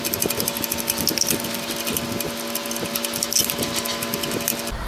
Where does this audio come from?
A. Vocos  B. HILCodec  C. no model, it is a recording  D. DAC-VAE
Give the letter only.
C